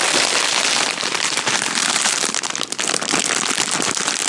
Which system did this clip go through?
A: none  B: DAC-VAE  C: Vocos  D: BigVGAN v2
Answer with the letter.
A